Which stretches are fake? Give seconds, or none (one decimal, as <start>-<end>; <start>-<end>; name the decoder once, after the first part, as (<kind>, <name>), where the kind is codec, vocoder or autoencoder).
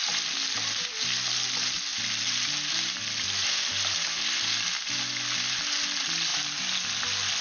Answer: none